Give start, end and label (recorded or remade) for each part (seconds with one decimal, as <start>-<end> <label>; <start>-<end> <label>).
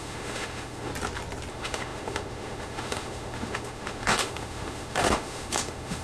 0.0-0.9 remade; 0.9-1.5 recorded; 1.5-6.0 remade